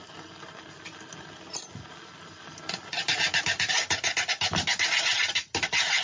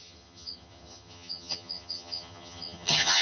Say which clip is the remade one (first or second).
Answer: second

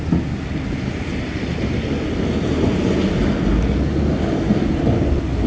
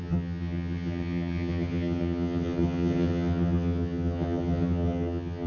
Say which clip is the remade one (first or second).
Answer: second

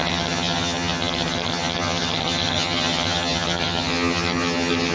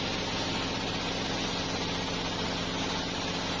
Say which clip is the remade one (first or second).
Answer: first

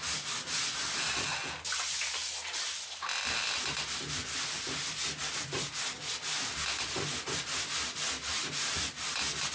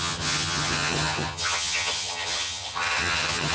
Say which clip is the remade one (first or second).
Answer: second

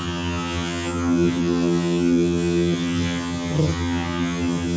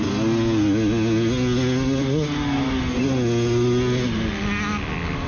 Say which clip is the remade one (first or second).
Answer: first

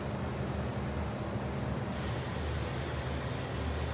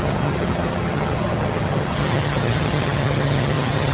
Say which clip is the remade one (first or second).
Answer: second